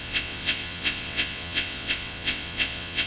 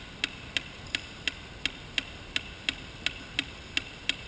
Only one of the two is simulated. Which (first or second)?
first